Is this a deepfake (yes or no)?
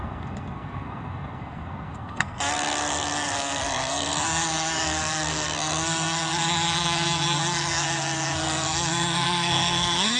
yes